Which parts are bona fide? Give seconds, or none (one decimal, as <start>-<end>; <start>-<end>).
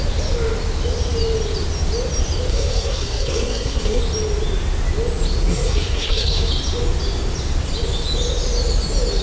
0.0-2.5; 4.0-5.5; 6.5-9.2